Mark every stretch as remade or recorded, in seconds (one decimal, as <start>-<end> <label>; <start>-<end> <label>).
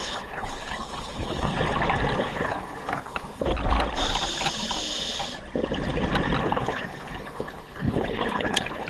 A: 0.0-1.5 remade; 1.5-2.2 recorded; 2.2-3.5 remade; 3.5-6.4 recorded; 6.4-8.9 remade